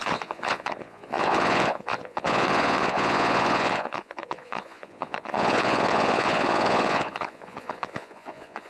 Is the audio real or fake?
fake